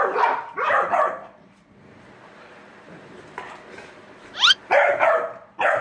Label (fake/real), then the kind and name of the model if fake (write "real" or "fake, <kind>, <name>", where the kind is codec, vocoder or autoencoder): fake, vocoder, BigVGAN v2